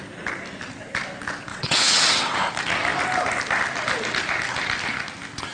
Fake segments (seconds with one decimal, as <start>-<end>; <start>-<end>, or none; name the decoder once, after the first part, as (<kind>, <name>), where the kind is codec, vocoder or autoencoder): 1.5-2.4 (vocoder, WaveNeXt)